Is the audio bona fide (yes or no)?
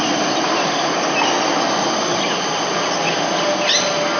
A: yes